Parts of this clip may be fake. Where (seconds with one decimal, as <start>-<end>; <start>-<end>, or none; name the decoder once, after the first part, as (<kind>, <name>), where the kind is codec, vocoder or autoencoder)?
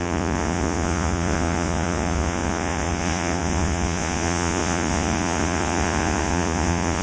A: 0.0-7.0 (vocoder, Vocos)